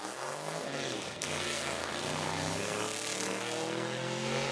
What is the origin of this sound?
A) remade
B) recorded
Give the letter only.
A